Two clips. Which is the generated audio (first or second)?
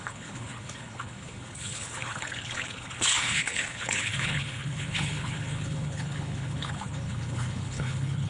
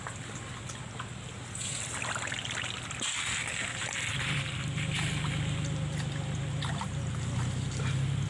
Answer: first